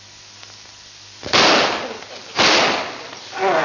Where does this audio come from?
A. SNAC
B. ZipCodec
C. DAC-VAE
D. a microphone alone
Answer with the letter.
D